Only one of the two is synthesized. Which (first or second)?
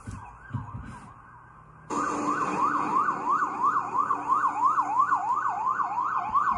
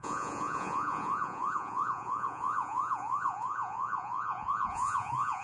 second